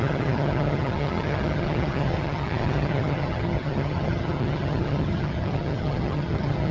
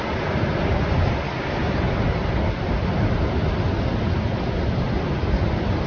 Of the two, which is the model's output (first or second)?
first